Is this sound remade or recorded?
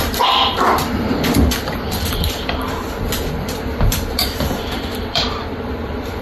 remade